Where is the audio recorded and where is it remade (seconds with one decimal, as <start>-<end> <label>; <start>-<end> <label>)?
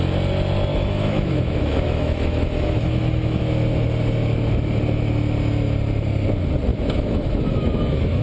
0.0-0.7 recorded; 0.7-3.4 remade; 3.4-6.7 recorded; 6.7-8.2 remade